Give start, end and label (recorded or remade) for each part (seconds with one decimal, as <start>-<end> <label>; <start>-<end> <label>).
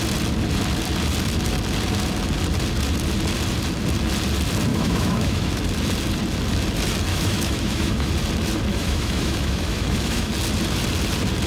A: 0.0-4.7 recorded; 4.7-5.5 remade; 5.5-7.1 recorded; 7.1-8.1 remade; 8.1-8.7 recorded; 8.7-10.3 remade; 10.3-11.5 recorded